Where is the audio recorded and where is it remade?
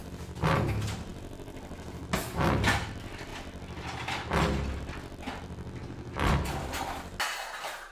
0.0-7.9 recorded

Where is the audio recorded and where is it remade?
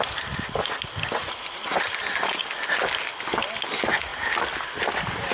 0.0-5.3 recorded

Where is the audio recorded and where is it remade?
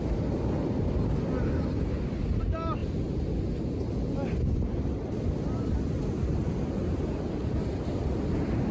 0.0-7.4 recorded; 7.4-8.0 remade; 8.0-8.7 recorded